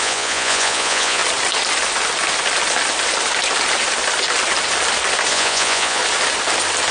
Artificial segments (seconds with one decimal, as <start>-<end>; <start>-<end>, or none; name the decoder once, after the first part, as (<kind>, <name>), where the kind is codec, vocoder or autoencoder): 0.0-1.2 (vocoder, Vocos); 5.3-6.0